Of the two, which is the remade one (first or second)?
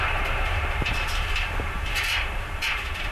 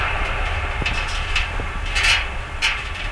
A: first